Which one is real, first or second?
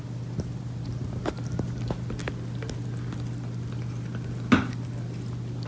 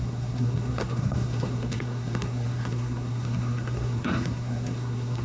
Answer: first